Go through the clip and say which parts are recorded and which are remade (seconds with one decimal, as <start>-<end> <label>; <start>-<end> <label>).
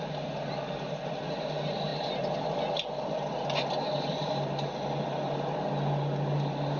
0.0-6.8 recorded